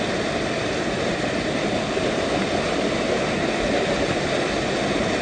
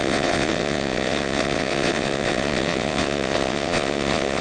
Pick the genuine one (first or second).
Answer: first